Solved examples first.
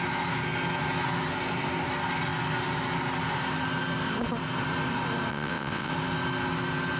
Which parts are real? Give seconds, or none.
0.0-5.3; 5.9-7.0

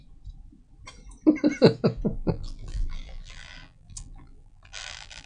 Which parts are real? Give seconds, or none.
0.0-2.1

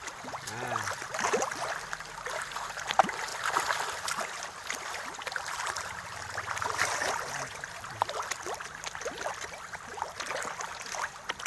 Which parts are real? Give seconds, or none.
0.0-11.5

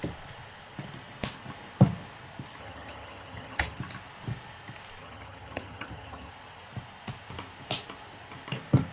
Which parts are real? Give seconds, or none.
0.0-2.6; 3.8-5.0; 6.3-8.9

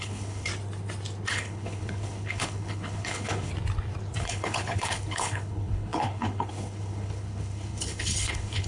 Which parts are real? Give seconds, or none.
0.5-1.3; 3.5-4.2

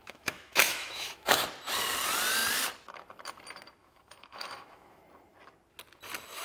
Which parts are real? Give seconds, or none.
1.4-3.8; 5.0-6.4

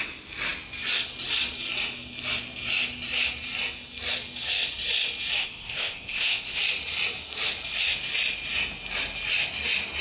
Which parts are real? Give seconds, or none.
0.0-5.4; 6.6-10.0

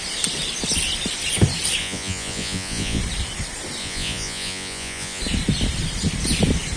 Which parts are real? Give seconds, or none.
0.0-1.8; 3.0-3.8; 5.2-6.8